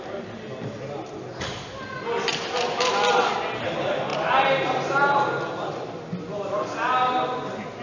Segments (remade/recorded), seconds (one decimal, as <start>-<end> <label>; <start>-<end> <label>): 0.0-7.8 recorded